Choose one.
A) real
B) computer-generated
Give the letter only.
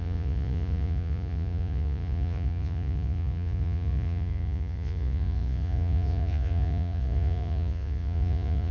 B